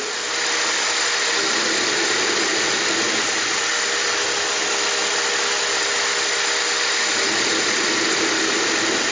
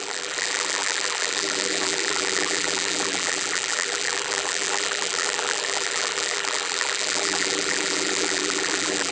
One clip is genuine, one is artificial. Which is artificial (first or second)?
second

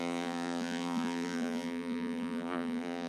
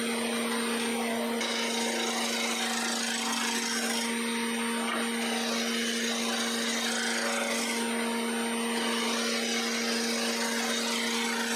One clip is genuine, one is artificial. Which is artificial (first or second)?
first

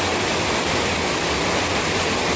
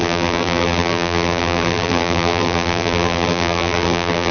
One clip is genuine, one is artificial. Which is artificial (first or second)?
second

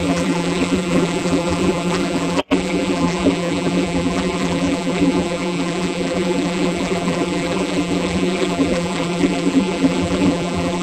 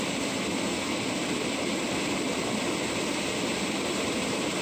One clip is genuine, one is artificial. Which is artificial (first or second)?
first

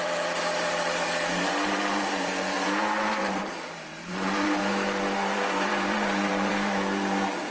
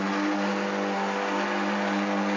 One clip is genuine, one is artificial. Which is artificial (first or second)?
first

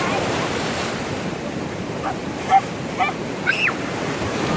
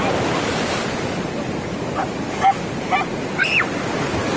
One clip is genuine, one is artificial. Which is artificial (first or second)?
first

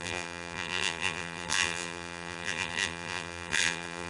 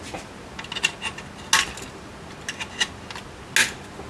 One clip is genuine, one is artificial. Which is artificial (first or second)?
first